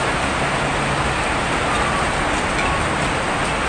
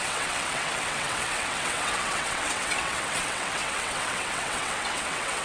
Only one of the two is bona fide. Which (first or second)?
first